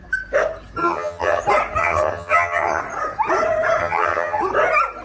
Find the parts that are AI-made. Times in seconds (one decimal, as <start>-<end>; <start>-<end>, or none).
0.8-1.4; 1.8-2.8; 3.8-4.4